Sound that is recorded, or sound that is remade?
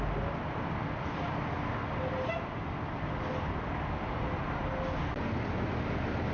recorded